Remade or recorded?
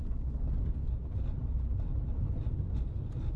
recorded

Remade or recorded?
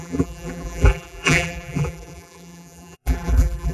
remade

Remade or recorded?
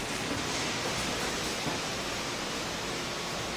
recorded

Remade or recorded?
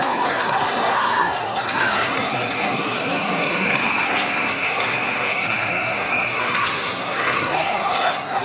remade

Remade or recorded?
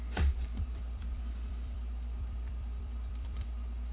remade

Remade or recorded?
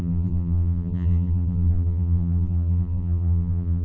remade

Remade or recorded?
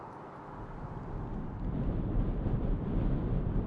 remade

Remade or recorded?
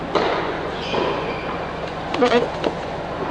remade